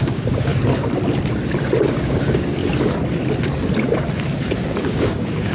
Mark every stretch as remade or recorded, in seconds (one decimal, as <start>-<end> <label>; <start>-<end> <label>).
0.0-0.5 remade; 0.5-1.9 recorded; 1.9-2.6 remade; 2.6-4.8 recorded; 4.8-5.5 remade